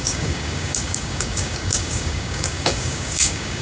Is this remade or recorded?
remade